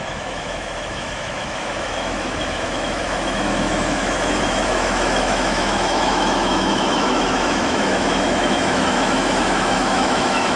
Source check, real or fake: fake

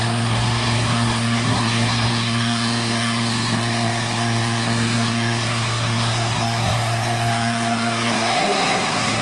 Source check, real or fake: fake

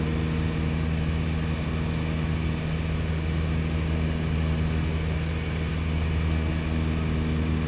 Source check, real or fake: real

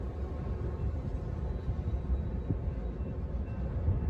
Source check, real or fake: real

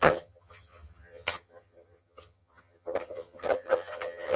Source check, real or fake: fake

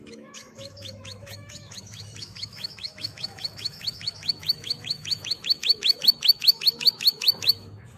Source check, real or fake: fake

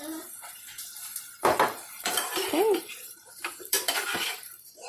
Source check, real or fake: fake